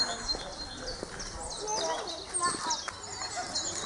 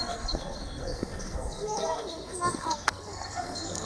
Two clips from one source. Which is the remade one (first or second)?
second